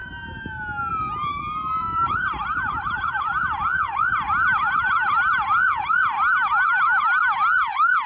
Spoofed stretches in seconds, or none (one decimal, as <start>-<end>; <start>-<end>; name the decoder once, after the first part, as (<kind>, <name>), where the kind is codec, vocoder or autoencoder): 0.9-3.3 (vocoder, BigVGAN v2)